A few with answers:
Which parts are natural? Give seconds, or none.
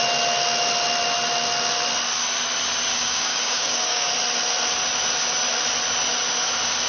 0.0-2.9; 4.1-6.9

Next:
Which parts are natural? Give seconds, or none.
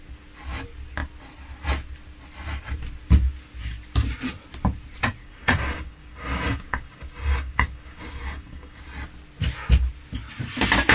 0.0-5.2; 8.8-10.9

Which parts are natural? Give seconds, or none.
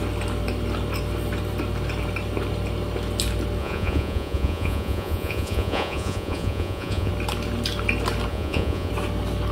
0.0-3.6; 7.1-8.3; 8.9-9.5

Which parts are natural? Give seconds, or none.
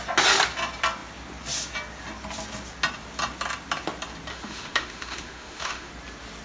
0.0-4.3; 5.9-6.4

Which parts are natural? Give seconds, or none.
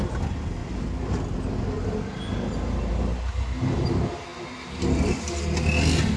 0.0-6.2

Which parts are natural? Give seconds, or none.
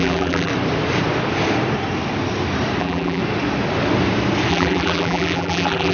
0.5-2.8; 3.2-4.5